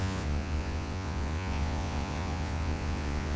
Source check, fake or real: fake